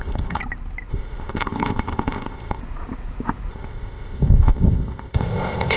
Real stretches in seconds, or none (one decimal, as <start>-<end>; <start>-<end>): 0.4-0.9; 2.6-3.5

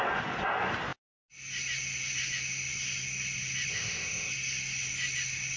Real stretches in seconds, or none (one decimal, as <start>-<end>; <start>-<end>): 0.0-3.7; 4.3-5.6

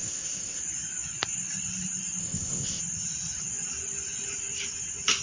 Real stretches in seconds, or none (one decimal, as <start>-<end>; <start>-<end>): 0.6-2.2; 2.8-5.2

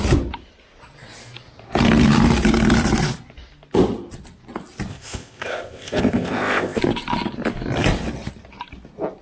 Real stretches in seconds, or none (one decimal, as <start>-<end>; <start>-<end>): 0.0-4.9; 6.8-9.2

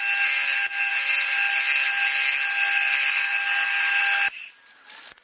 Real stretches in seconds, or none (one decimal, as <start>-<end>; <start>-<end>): 0.0-5.2

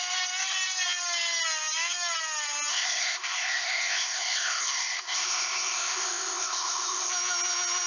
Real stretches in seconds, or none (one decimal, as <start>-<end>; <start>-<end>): 0.0-2.7; 7.1-7.9

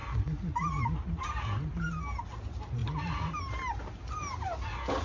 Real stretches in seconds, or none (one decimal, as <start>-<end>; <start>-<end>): 0.0-5.0

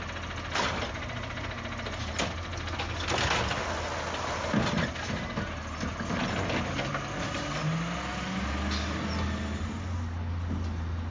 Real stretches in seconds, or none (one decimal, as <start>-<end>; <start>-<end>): 0.0-11.1